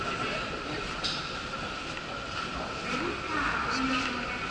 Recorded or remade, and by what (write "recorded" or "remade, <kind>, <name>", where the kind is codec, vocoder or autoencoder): recorded